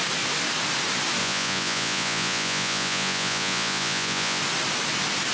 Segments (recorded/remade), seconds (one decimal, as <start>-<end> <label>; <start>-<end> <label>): 0.0-1.2 recorded; 1.2-4.4 remade; 4.4-5.3 recorded